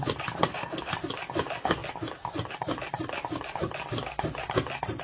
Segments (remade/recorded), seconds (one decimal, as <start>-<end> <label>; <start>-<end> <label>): 0.0-0.4 recorded; 0.4-0.9 remade; 0.9-5.0 recorded